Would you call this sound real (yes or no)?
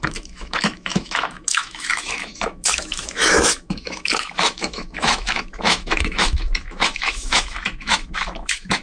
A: no